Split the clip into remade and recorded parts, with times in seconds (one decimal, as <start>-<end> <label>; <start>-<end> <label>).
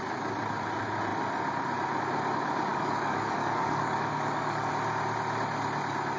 0.0-2.7 recorded; 2.7-4.7 remade; 4.7-6.2 recorded